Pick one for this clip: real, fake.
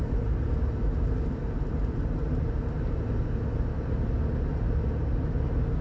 real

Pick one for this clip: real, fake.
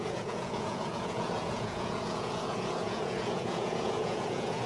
fake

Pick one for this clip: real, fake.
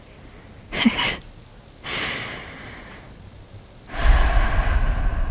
real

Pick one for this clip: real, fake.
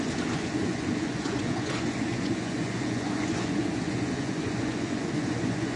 fake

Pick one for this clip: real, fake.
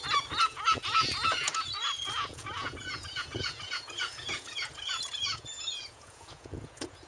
fake